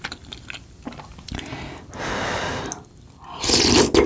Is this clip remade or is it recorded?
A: recorded